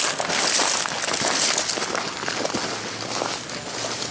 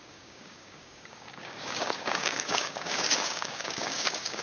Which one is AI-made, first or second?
second